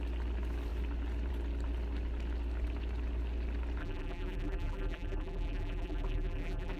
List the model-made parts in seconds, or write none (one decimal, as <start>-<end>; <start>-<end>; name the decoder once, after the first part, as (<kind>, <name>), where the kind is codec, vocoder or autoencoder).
3.8-6.8 (vocoder, BigVGAN v2)